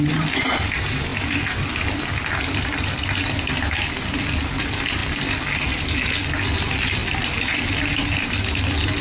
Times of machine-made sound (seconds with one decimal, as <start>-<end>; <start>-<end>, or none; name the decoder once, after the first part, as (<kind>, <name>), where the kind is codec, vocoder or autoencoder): none